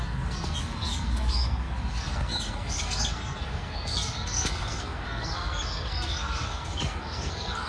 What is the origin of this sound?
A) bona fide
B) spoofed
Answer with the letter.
B